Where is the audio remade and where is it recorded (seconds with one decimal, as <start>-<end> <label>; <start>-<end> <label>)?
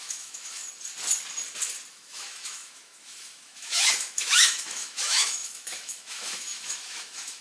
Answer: 0.0-0.6 remade; 0.6-1.9 recorded; 1.9-7.4 remade